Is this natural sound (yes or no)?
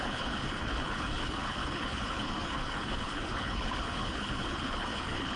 no